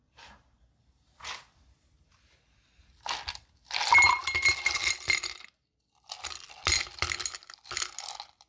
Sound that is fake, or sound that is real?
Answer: real